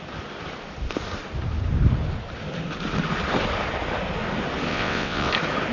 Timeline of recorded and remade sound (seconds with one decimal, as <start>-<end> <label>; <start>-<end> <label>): 0.0-4.7 recorded; 4.7-5.3 remade; 5.3-5.7 recorded